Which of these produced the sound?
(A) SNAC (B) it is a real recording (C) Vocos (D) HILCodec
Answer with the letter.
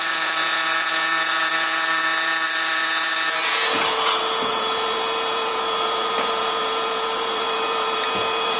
C